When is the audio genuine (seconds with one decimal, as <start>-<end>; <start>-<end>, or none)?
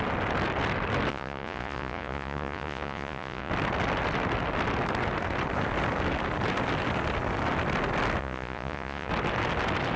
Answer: 0.0-1.1; 3.5-8.2; 9.1-10.0